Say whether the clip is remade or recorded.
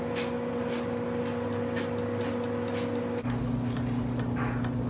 recorded